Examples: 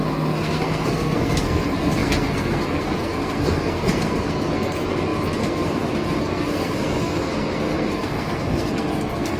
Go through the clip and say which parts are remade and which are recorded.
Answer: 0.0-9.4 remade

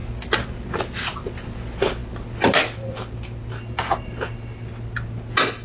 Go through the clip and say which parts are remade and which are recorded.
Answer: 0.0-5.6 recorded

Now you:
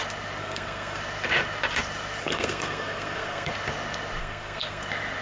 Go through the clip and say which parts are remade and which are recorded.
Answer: 0.0-0.4 recorded; 0.4-1.0 remade; 1.0-2.2 recorded; 2.2-3.5 remade; 3.5-4.2 recorded; 4.2-4.8 remade; 4.8-5.2 recorded